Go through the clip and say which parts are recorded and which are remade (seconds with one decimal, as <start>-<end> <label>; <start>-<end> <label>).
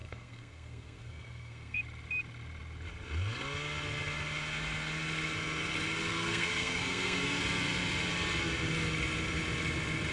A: 0.0-1.8 remade; 1.8-6.1 recorded; 6.1-7.4 remade; 7.4-10.1 recorded